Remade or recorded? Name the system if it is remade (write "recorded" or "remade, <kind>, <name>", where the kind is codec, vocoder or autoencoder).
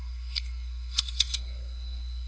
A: remade, codec, SNAC